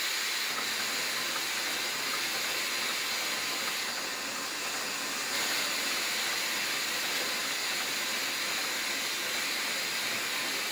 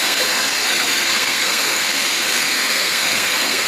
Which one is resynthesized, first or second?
second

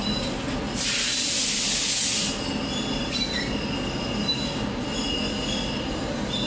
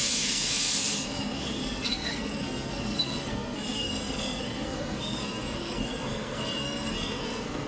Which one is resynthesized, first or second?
second